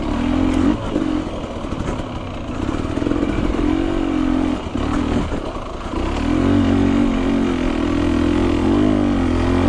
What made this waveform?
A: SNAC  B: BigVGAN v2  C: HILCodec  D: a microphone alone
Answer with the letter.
D